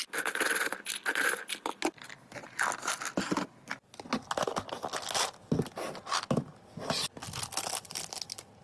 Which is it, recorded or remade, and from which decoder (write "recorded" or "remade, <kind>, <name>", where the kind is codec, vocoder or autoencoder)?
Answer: recorded